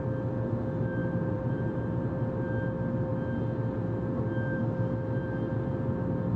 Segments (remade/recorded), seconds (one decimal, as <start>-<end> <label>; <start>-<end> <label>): 0.0-1.0 recorded; 1.0-2.1 remade; 2.1-6.4 recorded